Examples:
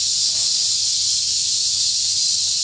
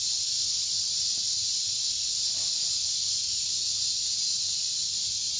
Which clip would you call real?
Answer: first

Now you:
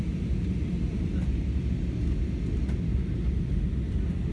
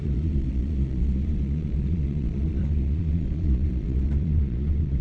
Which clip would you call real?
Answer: first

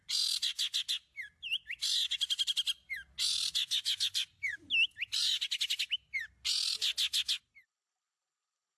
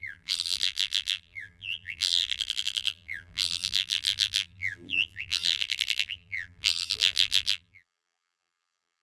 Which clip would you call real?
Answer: first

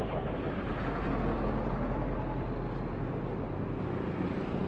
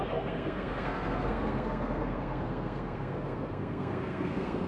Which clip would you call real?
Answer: first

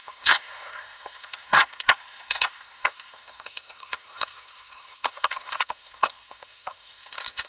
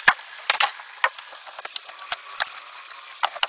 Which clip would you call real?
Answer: second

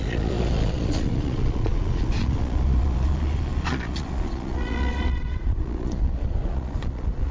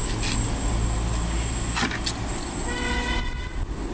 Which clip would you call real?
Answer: second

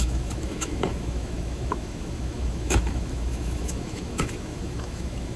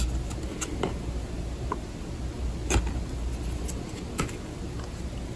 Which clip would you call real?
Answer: second